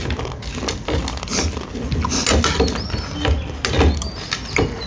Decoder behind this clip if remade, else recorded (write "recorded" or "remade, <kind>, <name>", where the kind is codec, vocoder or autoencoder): recorded